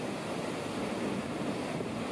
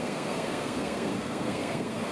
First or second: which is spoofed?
second